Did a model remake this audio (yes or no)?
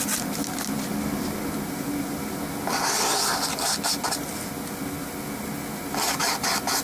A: no